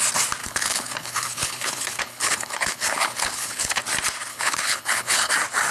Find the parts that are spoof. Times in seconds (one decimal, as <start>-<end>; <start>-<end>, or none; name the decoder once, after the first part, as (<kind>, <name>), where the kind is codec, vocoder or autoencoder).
0.4-3.8 (codec, HILCodec); 4.3-5.3